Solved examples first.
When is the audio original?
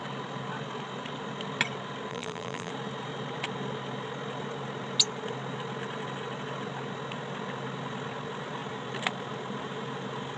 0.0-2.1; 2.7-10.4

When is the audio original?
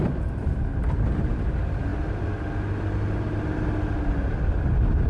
0.0-5.1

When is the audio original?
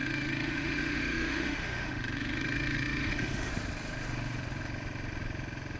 3.5-5.8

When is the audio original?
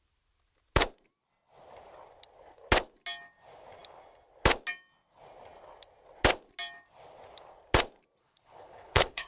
0.0-8.2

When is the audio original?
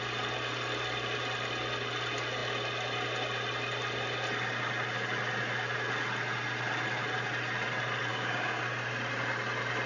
0.0-8.1; 8.6-9.9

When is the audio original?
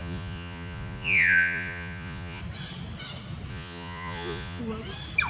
2.4-3.5; 4.6-5.3